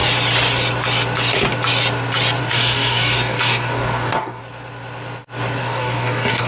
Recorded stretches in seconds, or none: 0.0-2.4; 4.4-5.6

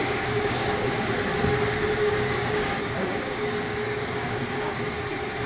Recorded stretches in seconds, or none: 1.0-1.8; 5.1-5.5

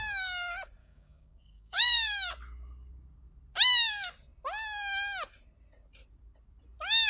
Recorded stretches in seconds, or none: 0.0-0.8; 2.3-7.1